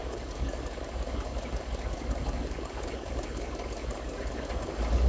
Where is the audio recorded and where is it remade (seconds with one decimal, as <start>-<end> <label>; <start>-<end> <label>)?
0.0-5.1 remade